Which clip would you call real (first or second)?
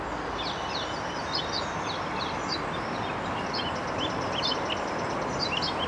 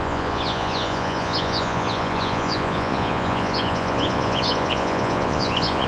first